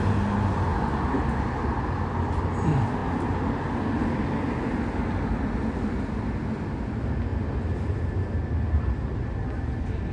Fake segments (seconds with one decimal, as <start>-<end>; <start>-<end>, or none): none